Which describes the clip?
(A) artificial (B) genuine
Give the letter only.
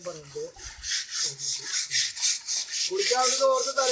B